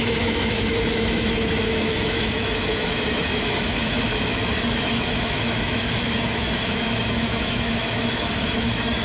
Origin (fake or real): fake